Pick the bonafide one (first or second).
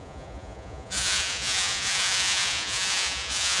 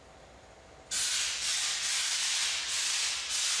second